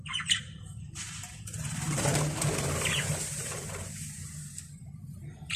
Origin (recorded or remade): remade